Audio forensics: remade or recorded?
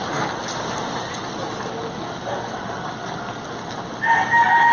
recorded